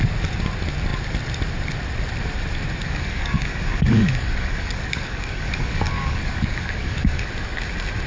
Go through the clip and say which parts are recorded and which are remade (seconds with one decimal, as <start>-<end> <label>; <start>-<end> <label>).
0.0-2.8 recorded; 2.8-7.3 remade; 7.3-8.1 recorded